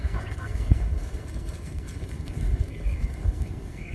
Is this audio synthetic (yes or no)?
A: yes